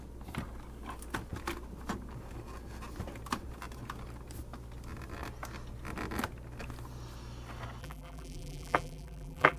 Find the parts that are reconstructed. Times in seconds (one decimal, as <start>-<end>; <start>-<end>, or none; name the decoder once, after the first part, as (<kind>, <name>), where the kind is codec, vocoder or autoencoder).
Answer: 7.8-9.6 (vocoder, BigVGAN v2)